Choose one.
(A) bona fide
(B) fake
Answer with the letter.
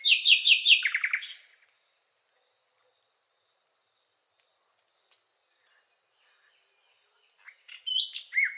A